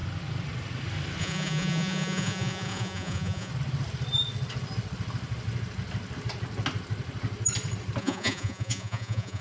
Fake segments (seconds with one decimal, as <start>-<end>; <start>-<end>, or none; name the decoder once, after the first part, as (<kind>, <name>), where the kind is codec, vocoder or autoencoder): 1.2-3.5 (vocoder, Vocos); 8.0-9.4